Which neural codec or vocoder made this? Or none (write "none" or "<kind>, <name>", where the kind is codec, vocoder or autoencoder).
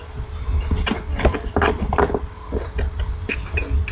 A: none